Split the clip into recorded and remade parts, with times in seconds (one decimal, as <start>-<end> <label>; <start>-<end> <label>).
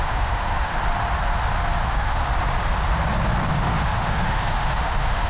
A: 0.0-0.7 remade; 0.7-1.8 recorded; 1.8-2.2 remade; 2.2-3.5 recorded; 3.5-5.3 remade